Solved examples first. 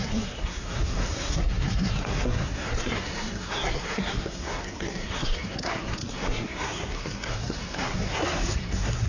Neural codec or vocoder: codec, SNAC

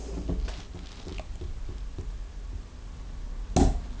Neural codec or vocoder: none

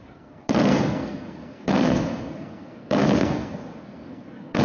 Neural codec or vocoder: codec, SNAC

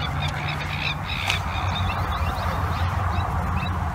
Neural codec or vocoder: none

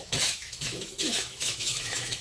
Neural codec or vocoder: autoencoder, DAC-VAE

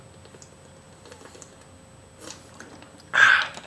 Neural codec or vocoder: none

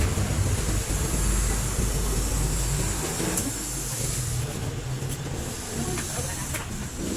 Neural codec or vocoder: none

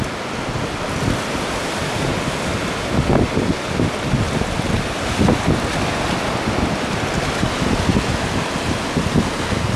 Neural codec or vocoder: none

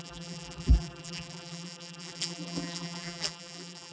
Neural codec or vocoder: vocoder, BigVGAN v2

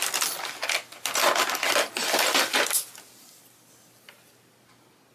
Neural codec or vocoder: none